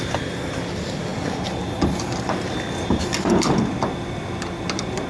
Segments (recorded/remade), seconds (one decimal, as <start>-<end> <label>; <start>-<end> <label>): 0.0-5.1 recorded